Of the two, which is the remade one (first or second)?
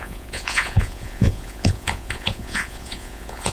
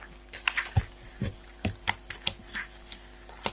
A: first